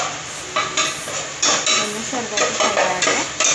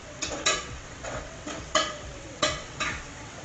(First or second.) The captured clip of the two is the first